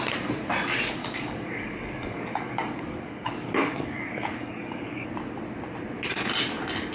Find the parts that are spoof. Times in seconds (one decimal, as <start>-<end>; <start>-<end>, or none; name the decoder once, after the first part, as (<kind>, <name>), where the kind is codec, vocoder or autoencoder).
1.0-5.1 (codec, DAC)